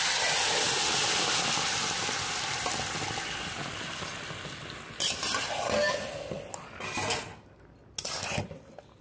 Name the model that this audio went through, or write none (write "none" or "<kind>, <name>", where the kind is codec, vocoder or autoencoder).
none